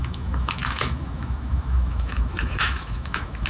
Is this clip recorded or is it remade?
remade